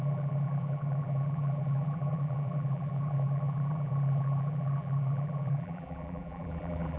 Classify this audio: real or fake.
fake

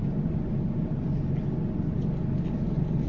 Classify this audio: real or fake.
real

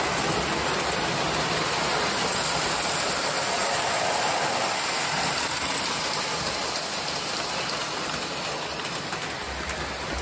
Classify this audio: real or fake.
real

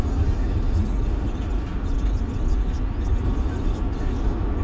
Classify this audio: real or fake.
real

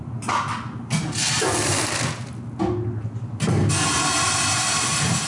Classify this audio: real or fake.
real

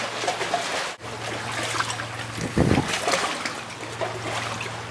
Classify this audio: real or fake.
real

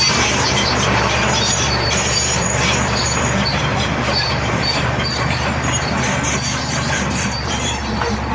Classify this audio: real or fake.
fake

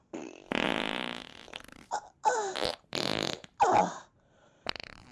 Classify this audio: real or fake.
fake